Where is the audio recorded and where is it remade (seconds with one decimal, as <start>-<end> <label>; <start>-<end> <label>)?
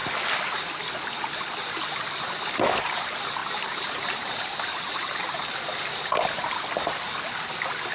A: 0.0-3.4 recorded; 3.4-5.3 remade; 5.3-7.9 recorded